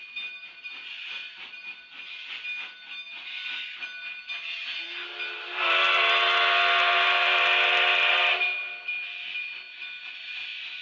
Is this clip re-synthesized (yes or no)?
no